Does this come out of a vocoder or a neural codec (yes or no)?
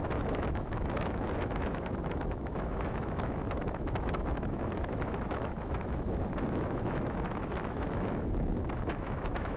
yes